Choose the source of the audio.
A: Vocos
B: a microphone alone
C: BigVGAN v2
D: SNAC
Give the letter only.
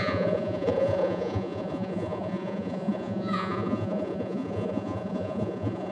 A